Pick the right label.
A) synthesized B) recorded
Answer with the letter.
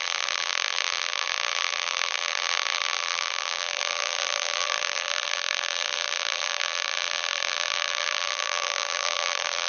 A